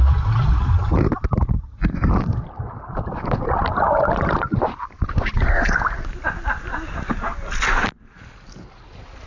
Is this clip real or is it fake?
real